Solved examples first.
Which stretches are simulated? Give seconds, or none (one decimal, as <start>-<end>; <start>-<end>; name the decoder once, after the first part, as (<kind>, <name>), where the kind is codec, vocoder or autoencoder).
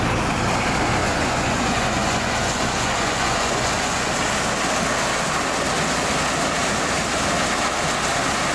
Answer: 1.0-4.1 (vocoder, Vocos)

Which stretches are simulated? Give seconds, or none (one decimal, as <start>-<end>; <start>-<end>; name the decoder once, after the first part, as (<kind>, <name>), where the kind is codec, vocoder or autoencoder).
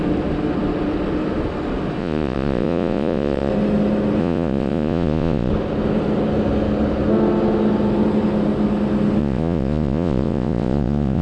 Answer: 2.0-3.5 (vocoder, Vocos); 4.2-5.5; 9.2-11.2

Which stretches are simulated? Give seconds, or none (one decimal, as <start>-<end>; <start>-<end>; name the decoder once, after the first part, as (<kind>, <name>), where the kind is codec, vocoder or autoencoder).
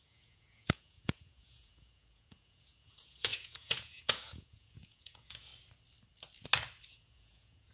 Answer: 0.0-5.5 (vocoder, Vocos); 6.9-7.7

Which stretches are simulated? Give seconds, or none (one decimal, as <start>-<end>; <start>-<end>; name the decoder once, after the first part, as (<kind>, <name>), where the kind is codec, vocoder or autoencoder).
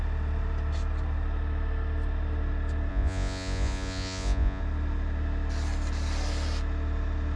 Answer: 2.9-4.6 (vocoder, Vocos)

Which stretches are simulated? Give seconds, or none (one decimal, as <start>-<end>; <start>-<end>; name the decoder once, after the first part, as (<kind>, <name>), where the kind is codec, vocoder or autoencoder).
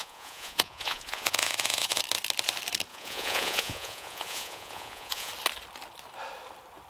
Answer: 0.0-2.0 (vocoder, Vocos); 2.9-5.3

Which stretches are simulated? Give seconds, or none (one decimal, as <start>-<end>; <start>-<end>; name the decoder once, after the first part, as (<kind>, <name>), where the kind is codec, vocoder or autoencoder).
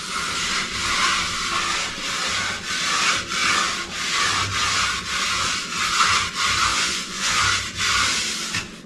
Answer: 6.7-7.4 (vocoder, Vocos)